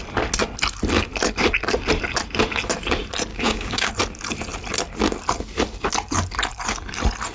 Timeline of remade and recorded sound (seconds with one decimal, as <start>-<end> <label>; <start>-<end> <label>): 0.0-3.3 recorded; 3.3-3.9 remade; 3.9-7.3 recorded